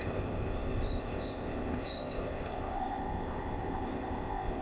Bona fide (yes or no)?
no